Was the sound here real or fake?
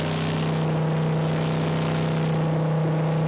real